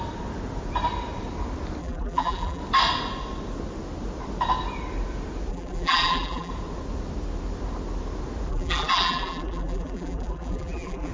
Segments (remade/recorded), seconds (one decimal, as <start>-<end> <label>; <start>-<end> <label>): 0.0-1.8 recorded; 1.8-2.6 remade; 2.6-5.5 recorded; 5.5-6.5 remade; 6.5-8.5 recorded; 8.5-11.1 remade